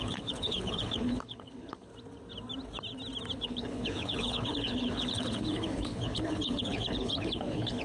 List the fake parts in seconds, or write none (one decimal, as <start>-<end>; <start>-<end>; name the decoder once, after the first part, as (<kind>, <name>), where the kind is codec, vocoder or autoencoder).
0.0-1.9 (codec, HILCodec); 3.4-7.8